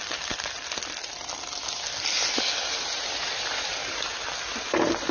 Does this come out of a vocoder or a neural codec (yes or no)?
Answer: no